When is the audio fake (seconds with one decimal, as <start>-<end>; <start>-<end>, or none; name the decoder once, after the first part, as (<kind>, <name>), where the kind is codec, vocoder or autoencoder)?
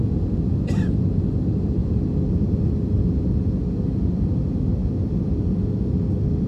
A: none